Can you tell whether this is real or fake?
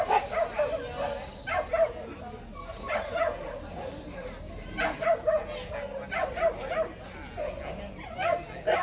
real